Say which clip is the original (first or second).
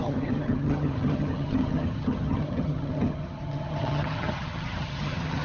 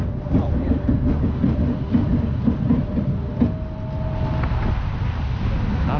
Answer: second